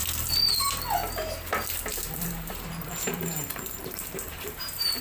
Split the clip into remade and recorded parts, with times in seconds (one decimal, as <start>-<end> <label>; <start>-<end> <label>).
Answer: 0.0-1.9 recorded; 1.9-5.0 remade